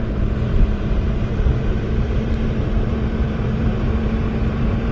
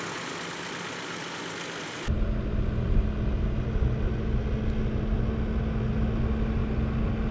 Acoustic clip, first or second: second